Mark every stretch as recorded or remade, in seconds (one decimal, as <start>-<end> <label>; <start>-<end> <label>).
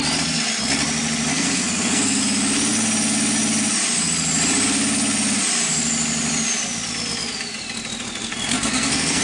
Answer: 0.0-1.3 recorded; 1.3-2.2 remade; 2.2-8.2 recorded; 8.2-9.2 remade